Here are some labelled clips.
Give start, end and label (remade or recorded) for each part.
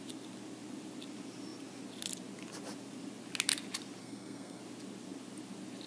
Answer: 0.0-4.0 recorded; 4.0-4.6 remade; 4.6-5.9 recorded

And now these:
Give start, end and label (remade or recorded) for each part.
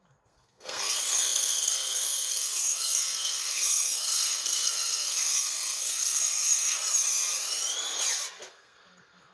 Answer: 0.0-6.8 remade; 6.8-8.5 recorded; 8.5-9.3 remade